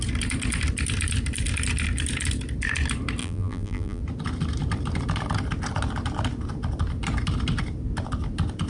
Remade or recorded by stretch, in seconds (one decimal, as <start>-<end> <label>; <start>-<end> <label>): 0.0-3.2 recorded; 3.2-4.0 remade; 4.0-8.7 recorded